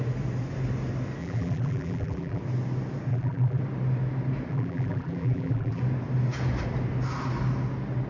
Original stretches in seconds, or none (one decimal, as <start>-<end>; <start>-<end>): 0.0-1.2; 2.4-3.1; 3.6-4.5; 5.8-8.1